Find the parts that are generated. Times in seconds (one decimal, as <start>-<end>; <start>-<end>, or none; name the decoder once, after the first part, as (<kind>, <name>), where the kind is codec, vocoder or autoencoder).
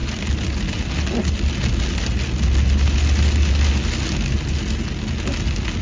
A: none